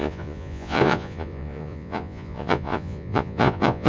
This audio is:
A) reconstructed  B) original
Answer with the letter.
A